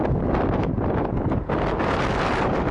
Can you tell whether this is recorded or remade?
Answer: recorded